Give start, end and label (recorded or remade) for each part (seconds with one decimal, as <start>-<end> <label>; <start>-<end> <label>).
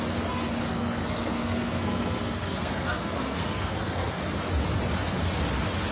0.0-0.7 recorded; 0.7-4.2 remade; 4.2-5.9 recorded